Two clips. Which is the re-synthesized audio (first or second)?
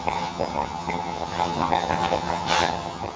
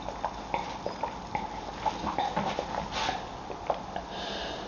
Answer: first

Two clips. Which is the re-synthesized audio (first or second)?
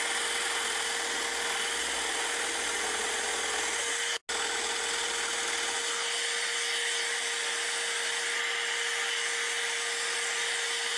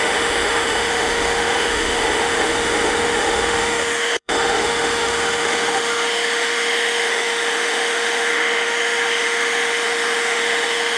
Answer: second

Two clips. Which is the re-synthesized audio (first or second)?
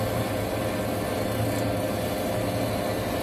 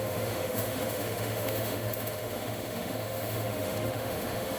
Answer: second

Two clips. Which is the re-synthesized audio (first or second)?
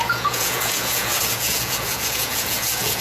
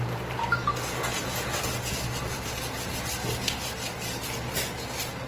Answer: first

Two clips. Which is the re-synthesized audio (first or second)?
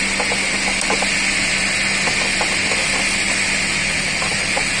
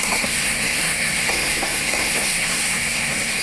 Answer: second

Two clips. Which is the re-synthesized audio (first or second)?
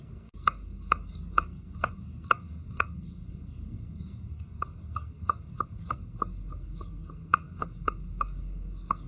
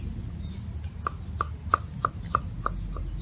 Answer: first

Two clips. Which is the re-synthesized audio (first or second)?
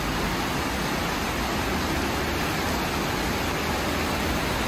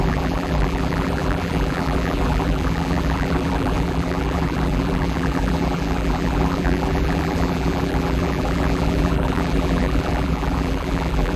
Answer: second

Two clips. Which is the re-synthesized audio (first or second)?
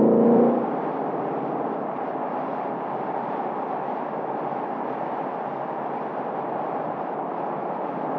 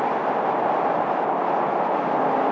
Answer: first